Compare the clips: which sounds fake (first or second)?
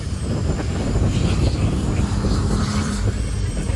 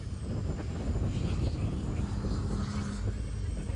first